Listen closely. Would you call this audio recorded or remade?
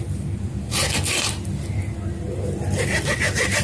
recorded